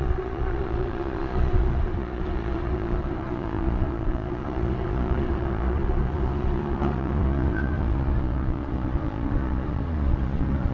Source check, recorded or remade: remade